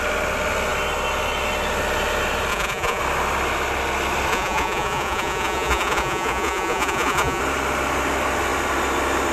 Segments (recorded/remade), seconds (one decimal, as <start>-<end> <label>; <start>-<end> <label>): 0.0-2.5 recorded; 2.5-3.0 remade; 3.0-4.3 recorded; 4.3-7.4 remade; 7.4-9.3 recorded